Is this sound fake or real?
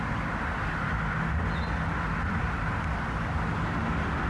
real